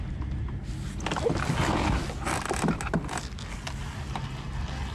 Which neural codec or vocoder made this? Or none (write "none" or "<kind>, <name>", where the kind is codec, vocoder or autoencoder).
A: none